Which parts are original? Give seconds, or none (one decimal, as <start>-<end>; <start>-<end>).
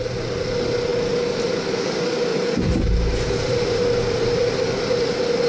0.0-2.3; 4.5-5.5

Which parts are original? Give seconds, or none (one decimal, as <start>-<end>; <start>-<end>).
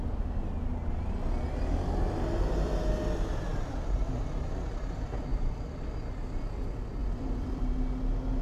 0.0-5.3; 5.9-7.0; 7.6-8.4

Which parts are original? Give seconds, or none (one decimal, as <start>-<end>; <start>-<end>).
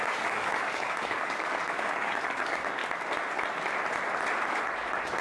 2.8-4.5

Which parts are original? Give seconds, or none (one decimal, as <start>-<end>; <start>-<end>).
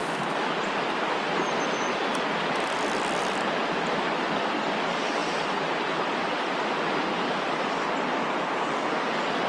0.5-9.5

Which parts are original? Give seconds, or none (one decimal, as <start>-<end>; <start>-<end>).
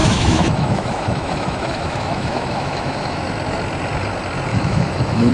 3.2-4.5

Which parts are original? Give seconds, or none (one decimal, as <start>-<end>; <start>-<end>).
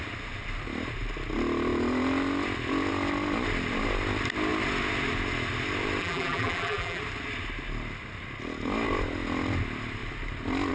0.0-6.0; 7.0-10.7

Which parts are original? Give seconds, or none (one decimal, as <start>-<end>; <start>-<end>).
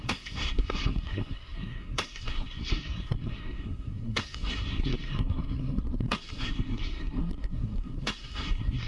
none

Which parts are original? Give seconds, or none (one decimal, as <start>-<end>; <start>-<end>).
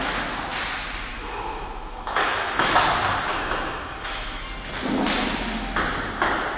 0.0-1.1; 2.8-3.3; 4.4-6.6